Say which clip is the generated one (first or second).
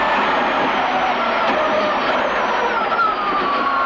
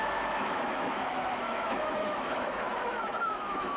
second